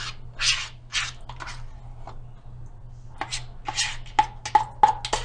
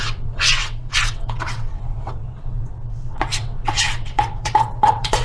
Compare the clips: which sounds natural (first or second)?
first